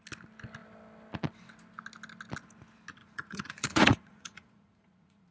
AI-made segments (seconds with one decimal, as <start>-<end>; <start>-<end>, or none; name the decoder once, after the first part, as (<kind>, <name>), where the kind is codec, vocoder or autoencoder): 3.0-5.3 (vocoder, Vocos)